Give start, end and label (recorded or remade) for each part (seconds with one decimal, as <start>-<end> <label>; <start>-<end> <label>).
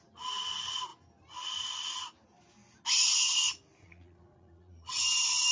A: 0.0-3.8 recorded; 3.8-5.0 remade; 5.0-5.5 recorded